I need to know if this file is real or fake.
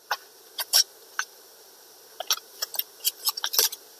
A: real